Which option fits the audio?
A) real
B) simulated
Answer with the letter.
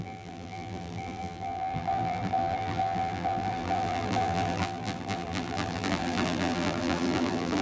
B